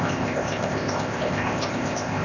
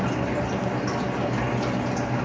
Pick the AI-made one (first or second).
first